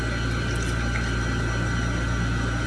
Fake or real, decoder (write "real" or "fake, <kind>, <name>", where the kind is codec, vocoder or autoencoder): real